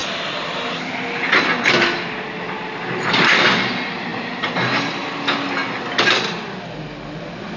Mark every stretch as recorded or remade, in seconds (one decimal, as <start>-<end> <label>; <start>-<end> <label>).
0.0-7.6 recorded